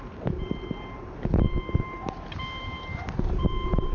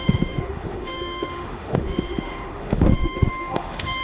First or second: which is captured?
first